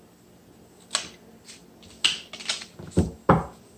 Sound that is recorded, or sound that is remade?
recorded